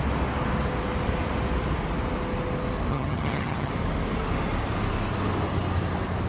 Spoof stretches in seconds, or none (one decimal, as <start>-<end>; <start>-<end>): 2.9-3.7